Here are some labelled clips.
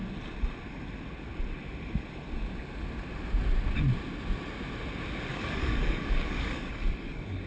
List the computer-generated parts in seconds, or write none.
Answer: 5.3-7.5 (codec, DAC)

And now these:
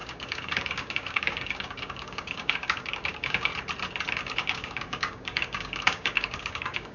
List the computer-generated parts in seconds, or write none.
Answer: 0.0-3.5 (codec, DAC); 4.1-6.9

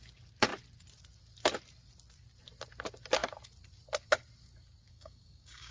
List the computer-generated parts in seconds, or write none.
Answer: 4.8-5.7 (codec, DAC)

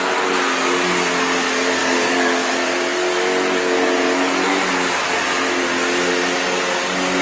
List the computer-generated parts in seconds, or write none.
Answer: 1.8-2.5 (codec, DAC)

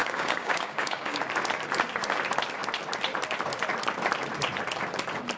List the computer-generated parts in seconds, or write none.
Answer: 0.0-1.2 (codec, DAC)

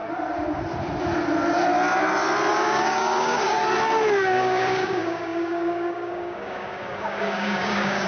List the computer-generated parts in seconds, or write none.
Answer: 2.5-3.6 (codec, DAC); 4.2-8.1

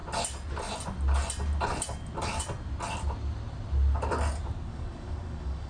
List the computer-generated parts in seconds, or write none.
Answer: 4.7-5.7 (codec, DAC)

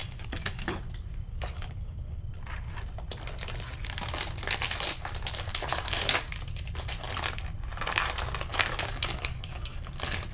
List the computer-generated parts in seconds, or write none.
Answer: 0.0-0.8 (codec, DAC); 1.3-2.2; 5.5-6.2; 8.5-9.9